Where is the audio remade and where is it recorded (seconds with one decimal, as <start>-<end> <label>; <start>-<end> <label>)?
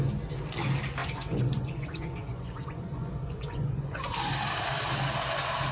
0.0-1.0 recorded; 1.0-4.3 remade; 4.3-5.7 recorded